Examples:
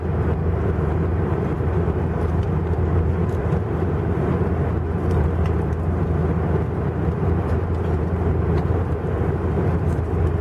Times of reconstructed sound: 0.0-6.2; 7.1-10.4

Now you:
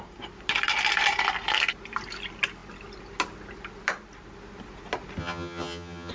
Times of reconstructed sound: 5.2-6.1

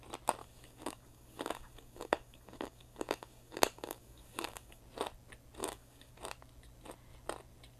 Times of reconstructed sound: 0.4-4.8; 5.6-6.1

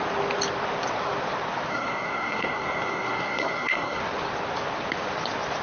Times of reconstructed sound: 1.7-4.0